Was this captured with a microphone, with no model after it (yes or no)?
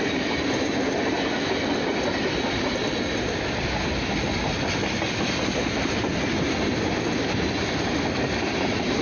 yes